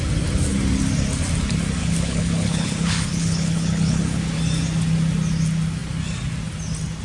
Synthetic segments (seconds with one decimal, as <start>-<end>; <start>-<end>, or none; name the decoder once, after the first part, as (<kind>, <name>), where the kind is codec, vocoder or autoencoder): 1.8-4.2 (codec, HILCodec)

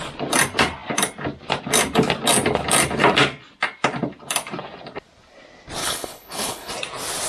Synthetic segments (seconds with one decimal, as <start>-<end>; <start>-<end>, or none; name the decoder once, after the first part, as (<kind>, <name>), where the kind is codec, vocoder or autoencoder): 5.8-6.7 (codec, HILCodec)

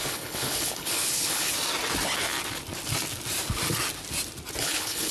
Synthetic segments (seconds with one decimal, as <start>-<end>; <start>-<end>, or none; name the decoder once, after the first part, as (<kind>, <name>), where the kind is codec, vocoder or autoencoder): 0.0-1.5 (codec, HILCodec); 4.6-5.1

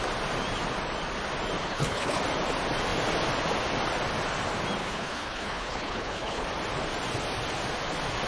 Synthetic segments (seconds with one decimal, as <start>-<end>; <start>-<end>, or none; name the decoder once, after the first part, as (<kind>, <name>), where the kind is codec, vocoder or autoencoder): 1.6-2.2 (codec, HILCodec); 4.8-6.4

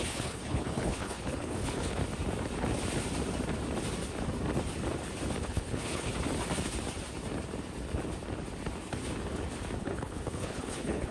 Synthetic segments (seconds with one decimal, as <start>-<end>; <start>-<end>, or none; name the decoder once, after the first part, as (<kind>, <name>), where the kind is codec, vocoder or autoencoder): 0.0-2.0 (codec, HILCodec); 5.4-6.1; 9.8-11.1

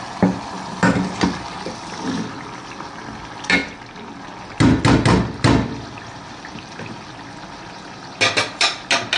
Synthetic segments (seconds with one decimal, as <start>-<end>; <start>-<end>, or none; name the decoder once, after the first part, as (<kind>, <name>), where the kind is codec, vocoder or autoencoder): none

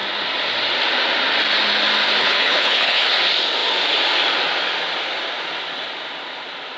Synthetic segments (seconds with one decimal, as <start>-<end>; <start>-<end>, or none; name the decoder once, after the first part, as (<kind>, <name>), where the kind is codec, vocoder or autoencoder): 2.2-3.1 (codec, HILCodec)

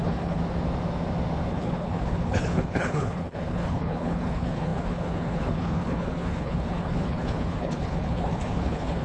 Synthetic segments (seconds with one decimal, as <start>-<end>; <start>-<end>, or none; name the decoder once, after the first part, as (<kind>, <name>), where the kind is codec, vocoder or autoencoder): 0.0-0.4 (codec, HILCodec); 1.5-9.0